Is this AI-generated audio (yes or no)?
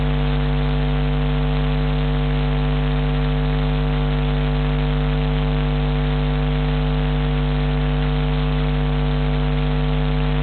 no